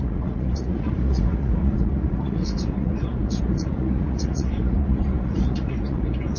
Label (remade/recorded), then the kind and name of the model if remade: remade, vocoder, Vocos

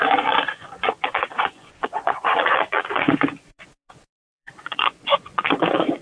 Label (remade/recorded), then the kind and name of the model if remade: remade, vocoder, Vocos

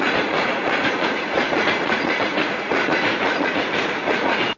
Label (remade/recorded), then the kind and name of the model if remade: remade, vocoder, Vocos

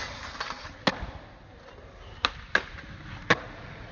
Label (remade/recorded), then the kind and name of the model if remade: recorded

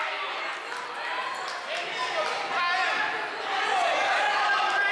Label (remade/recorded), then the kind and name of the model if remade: recorded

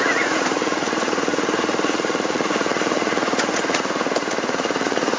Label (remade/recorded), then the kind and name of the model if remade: remade, vocoder, Vocos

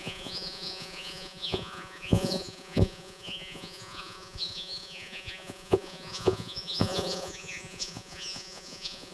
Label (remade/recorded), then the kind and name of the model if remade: remade, vocoder, Vocos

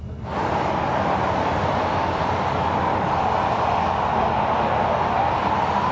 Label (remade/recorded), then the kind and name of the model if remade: recorded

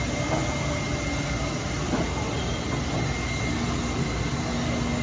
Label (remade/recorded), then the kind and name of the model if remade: recorded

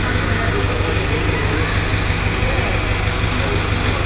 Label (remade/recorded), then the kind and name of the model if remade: recorded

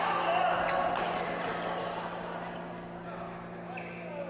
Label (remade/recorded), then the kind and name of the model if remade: recorded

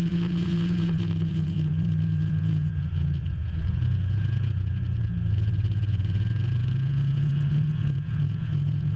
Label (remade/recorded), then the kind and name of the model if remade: remade, vocoder, Vocos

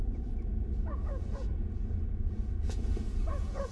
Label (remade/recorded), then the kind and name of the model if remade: remade, vocoder, Vocos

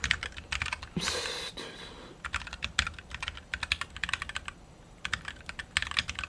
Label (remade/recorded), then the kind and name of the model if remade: recorded